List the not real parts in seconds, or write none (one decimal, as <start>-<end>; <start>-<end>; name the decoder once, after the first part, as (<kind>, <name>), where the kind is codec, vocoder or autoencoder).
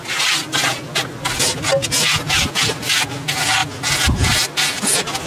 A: none